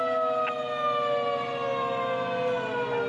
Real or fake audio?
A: real